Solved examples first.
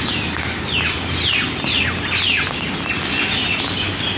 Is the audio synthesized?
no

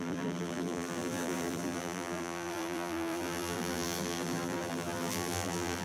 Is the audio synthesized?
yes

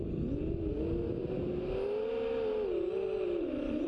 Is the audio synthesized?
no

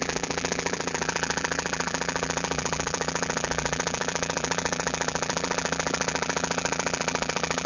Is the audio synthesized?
yes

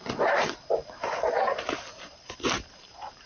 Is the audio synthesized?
yes